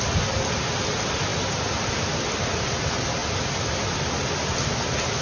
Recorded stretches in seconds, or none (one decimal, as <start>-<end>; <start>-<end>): 0.0-5.2